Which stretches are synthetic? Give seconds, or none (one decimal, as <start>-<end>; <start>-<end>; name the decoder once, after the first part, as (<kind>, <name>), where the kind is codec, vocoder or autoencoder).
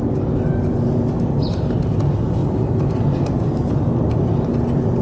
none